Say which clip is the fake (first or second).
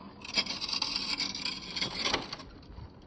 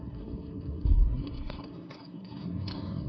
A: second